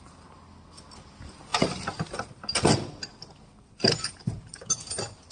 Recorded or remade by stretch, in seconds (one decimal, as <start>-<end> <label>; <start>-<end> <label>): 0.0-5.3 recorded